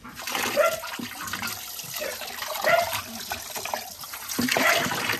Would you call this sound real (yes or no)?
yes